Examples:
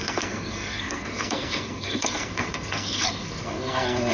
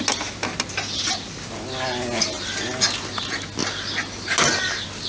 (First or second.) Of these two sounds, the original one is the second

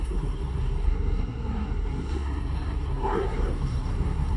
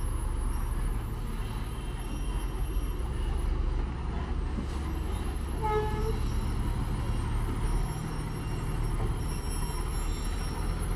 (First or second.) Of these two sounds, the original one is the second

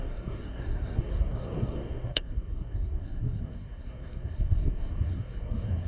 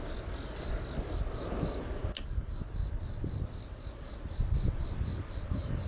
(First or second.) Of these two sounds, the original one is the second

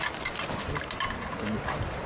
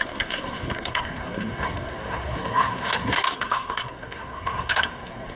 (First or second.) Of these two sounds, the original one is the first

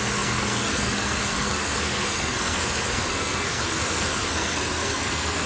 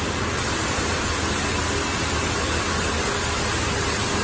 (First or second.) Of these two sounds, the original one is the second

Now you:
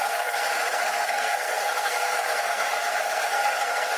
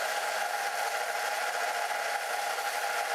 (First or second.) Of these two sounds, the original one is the second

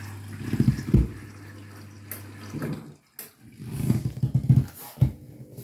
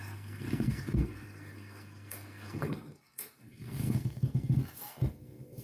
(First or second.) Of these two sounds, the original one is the first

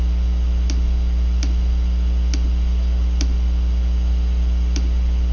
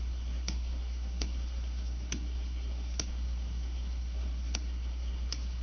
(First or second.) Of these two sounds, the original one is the first